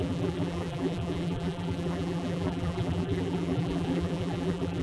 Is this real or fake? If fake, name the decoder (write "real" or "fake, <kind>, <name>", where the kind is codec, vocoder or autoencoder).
fake, vocoder, BigVGAN v2